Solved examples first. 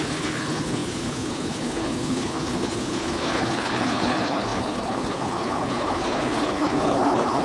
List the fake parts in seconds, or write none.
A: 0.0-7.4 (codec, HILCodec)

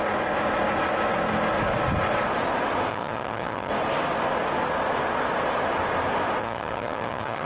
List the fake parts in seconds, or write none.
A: 2.9-3.7 (vocoder, HiFi-GAN); 6.4-7.5

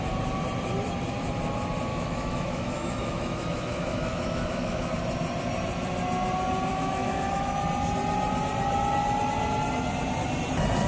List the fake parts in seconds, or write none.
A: 1.9-4.9 (autoencoder, DAC-VAE); 6.7-7.6

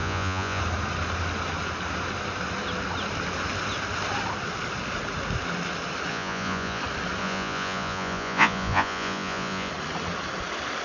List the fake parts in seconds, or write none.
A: 0.0-0.6 (vocoder, Vocos); 6.1-6.8; 7.2-9.7

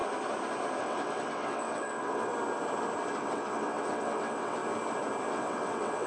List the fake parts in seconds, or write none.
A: 0.8-2.3 (vocoder, WaveNeXt); 3.2-4.6; 5.3-6.1

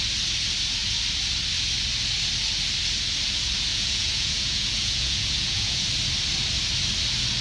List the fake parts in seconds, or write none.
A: 3.7-5.9 (vocoder, Vocos)

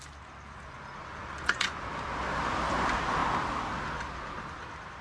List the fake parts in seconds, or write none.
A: 1.2-1.8 (vocoder, Vocos)

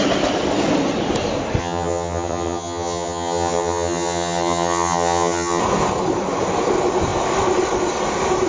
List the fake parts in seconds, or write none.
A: 1.6-5.6 (vocoder, HiFi-GAN)